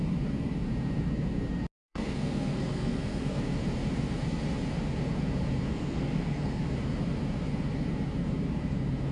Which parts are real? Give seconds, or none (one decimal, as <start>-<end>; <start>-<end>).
0.0-1.8; 3.4-5.7; 6.6-9.1